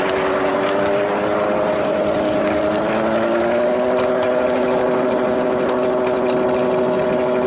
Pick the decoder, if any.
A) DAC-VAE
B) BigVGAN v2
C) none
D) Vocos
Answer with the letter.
C